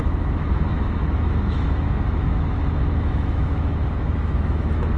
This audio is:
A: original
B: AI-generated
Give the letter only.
B